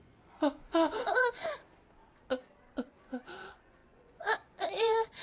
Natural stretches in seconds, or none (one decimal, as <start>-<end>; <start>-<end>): 1.4-2.9